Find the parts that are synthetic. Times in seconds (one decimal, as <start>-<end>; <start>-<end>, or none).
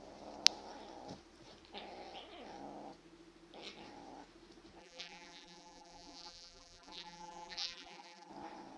4.8-8.3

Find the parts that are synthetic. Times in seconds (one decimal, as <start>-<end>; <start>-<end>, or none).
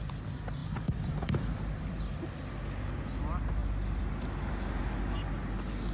0.6-2.2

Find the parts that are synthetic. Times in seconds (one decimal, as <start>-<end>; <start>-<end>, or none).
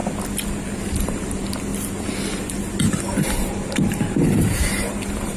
1.0-1.7; 3.0-5.4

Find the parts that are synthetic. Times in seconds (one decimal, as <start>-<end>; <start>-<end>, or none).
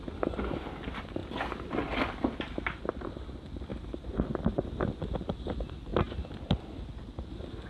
none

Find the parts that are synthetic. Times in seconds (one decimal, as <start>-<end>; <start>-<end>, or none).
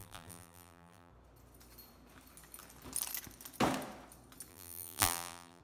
0.0-1.1; 4.5-5.6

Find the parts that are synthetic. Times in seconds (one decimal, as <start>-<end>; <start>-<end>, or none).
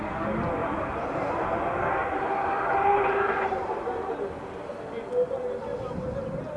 0.6-1.4; 2.0-4.1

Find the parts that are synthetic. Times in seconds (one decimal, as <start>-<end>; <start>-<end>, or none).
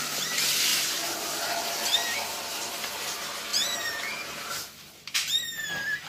0.7-2.9; 3.5-5.4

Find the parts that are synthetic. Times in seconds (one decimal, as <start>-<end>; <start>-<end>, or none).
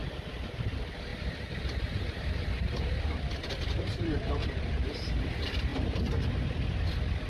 1.1-5.2